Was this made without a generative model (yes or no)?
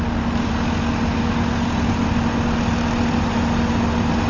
yes